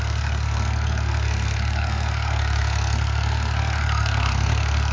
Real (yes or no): no